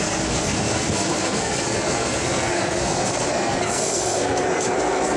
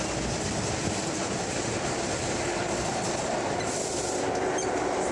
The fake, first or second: first